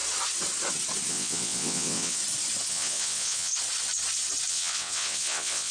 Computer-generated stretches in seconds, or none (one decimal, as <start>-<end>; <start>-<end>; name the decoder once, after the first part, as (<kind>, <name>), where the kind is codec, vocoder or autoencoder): 1.1-2.2 (vocoder, WaveNeXt); 2.7-3.5; 4.5-5.7